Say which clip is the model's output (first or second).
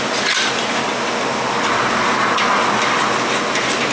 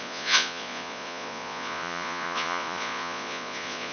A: second